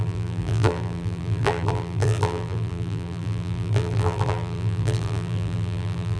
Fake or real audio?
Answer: fake